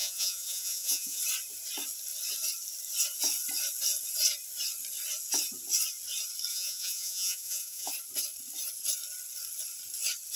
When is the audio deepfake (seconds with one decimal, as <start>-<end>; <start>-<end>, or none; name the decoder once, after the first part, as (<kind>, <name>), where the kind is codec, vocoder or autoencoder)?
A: 0.0-1.2 (vocoder, Vocos); 6.5-7.9